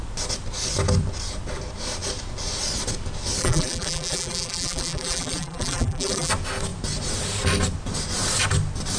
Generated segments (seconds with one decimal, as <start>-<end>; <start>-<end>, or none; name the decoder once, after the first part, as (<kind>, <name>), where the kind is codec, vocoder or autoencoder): 3.4-6.3 (vocoder, BigVGAN v2)